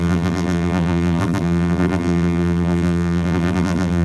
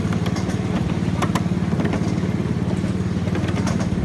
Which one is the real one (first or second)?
second